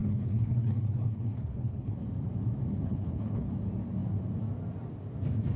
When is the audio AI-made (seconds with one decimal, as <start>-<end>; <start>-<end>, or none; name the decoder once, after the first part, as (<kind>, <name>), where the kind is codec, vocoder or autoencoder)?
0.0-1.9 (codec, HILCodec); 2.7-3.5

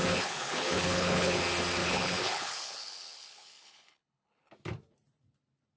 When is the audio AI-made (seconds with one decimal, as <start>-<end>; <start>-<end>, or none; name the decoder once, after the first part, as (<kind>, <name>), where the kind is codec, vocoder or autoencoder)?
0.0-1.4 (codec, HILCodec); 1.8-4.5

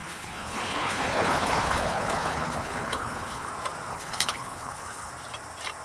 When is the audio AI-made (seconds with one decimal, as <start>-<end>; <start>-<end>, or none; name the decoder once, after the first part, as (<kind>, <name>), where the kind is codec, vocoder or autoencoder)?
0.0-3.5 (codec, HILCodec); 3.9-5.1

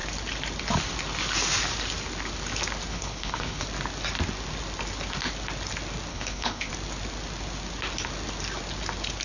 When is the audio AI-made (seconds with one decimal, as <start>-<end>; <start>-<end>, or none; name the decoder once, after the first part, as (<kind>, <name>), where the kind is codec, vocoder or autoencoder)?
2.9-3.6 (codec, HILCodec); 6.1-6.7

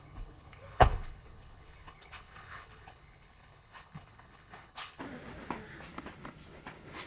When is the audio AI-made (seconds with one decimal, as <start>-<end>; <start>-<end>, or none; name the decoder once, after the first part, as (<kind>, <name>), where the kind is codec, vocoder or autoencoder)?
0.0-5.0 (codec, HILCodec)

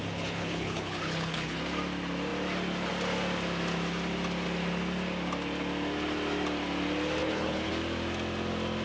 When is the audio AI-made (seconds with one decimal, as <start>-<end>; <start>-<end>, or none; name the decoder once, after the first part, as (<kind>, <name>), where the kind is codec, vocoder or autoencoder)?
0.0-1.6 (codec, HILCodec); 7.2-7.7

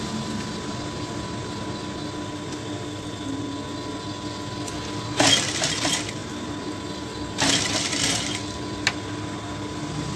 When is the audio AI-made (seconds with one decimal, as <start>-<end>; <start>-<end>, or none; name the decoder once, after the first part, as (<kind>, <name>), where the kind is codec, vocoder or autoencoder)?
none

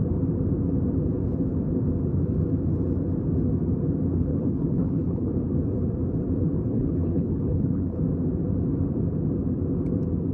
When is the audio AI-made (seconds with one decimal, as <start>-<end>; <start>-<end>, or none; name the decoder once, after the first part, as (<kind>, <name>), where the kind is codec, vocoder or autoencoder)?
4.3-5.3 (codec, HILCodec); 6.7-8.0